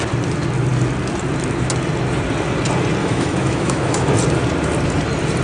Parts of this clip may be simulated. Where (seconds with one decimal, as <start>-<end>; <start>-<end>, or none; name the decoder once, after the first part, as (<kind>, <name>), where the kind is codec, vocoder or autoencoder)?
3.0-4.1 (autoencoder, DAC-VAE)